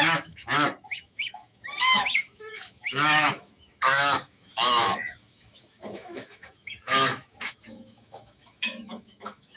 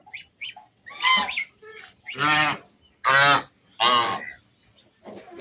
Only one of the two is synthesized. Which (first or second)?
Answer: first